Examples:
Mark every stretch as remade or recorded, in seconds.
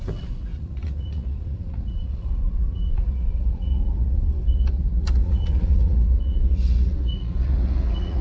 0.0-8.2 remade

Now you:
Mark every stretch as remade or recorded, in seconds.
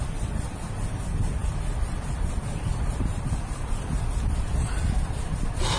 0.0-5.8 recorded